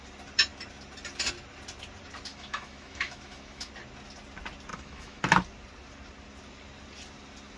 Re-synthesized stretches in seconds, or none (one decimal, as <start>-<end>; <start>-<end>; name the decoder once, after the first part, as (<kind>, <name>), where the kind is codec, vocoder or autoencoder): 2.3-3.7 (autoencoder, DAC-VAE); 4.7-5.2